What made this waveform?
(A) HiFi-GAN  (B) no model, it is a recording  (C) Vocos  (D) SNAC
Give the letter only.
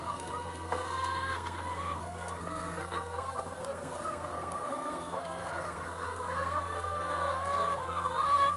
D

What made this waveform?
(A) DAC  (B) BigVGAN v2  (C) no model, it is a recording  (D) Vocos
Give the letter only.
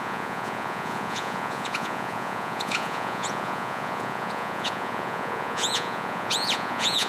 D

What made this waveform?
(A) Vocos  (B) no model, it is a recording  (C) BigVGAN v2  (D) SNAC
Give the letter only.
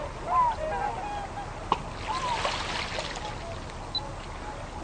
B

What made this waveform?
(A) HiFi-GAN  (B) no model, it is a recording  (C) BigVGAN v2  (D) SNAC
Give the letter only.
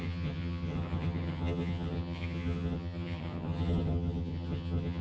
A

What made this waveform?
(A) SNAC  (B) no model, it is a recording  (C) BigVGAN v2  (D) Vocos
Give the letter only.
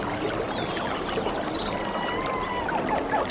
B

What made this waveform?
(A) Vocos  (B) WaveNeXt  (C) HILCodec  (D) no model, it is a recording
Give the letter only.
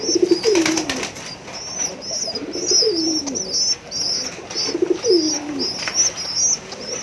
D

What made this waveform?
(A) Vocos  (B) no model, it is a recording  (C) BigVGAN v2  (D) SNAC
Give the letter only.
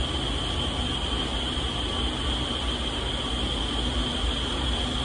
B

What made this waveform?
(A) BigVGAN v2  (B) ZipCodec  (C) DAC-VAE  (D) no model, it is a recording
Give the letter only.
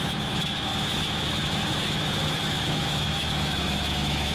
C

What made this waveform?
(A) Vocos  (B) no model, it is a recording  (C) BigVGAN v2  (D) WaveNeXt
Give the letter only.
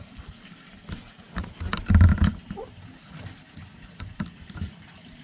B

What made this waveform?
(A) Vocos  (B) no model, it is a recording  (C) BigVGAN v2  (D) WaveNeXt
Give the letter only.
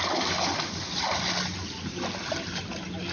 B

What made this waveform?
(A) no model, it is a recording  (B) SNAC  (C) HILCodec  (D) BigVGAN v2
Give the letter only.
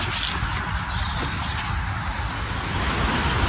A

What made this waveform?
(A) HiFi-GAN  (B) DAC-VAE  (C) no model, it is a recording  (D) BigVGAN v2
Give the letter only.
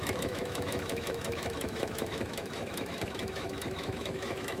B